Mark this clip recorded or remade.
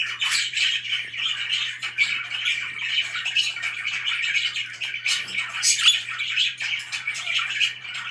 remade